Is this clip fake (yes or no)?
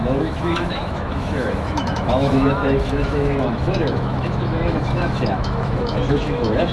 yes